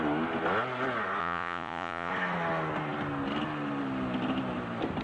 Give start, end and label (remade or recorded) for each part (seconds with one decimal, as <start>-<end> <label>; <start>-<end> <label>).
0.0-1.2 recorded; 1.2-2.1 remade; 2.1-5.0 recorded

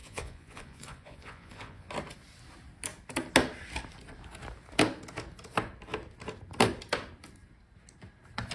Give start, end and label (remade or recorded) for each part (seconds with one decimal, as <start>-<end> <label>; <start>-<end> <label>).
0.0-1.9 remade; 1.9-8.5 recorded

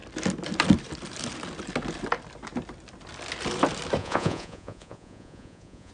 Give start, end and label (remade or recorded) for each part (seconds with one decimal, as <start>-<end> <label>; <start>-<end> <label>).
0.0-4.0 recorded; 4.0-5.9 remade

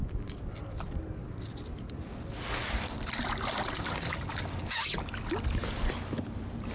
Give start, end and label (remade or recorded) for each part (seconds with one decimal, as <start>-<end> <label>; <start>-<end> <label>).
0.0-6.7 recorded

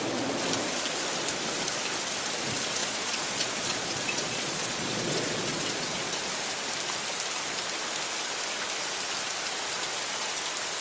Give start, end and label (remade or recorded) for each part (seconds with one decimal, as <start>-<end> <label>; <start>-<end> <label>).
0.0-2.8 recorded; 2.8-6.1 remade; 6.1-10.8 recorded